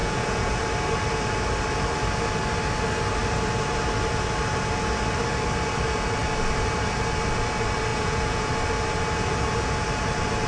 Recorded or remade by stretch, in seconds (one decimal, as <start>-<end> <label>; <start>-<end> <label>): 0.0-0.6 remade; 0.6-7.9 recorded; 7.9-8.5 remade; 8.5-10.5 recorded